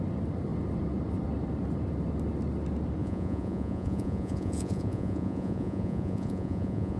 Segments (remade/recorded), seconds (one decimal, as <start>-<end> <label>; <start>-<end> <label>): 0.0-3.0 recorded; 3.0-7.0 remade